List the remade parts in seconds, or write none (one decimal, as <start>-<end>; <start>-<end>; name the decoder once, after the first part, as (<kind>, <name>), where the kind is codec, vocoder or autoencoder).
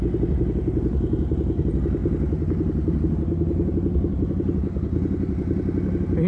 none